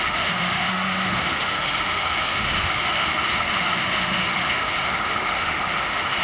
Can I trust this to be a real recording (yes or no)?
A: no